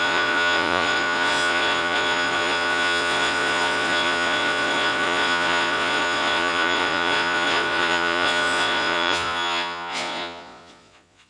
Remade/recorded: remade